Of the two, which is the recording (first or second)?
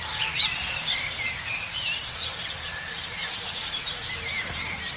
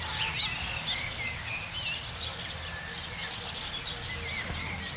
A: second